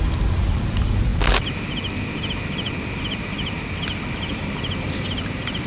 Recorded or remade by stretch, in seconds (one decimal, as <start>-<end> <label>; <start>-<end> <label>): 0.0-5.7 recorded